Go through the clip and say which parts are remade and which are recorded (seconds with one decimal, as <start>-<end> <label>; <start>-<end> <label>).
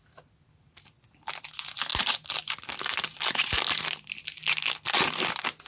0.0-5.7 recorded